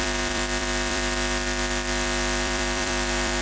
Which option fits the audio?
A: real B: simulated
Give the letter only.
B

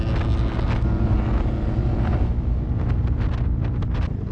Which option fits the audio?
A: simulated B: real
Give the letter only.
B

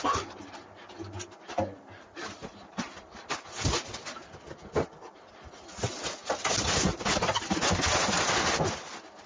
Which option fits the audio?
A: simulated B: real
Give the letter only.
B